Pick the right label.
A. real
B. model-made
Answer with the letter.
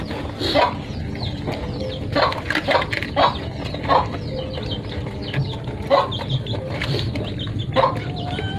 A